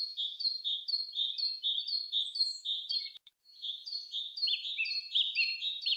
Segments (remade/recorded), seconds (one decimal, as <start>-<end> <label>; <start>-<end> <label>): 0.0-2.7 recorded; 2.7-6.0 remade